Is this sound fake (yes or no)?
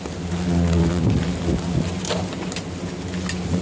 no